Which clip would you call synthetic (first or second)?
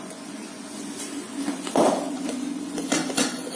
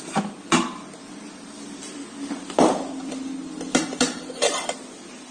first